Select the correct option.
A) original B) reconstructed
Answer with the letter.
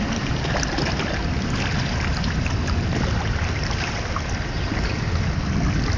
B